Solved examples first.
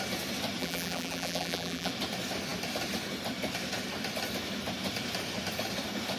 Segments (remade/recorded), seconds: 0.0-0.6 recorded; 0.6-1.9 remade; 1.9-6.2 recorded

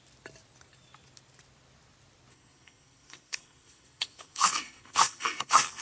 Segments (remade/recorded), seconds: 0.0-2.3 recorded; 2.3-5.8 remade